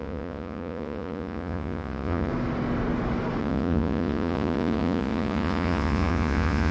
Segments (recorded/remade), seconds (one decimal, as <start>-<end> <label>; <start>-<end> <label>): 0.0-2.3 remade; 2.3-3.4 recorded; 3.4-6.7 remade